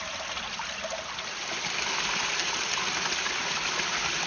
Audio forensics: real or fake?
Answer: real